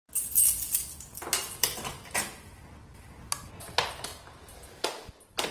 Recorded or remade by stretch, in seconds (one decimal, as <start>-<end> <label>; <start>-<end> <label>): 0.0-1.6 recorded; 1.6-2.2 remade; 2.2-4.1 recorded; 4.1-5.5 remade